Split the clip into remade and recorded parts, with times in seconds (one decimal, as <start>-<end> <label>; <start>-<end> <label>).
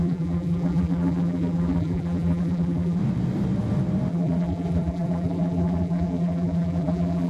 0.0-3.0 remade; 3.0-4.1 recorded; 4.1-7.3 remade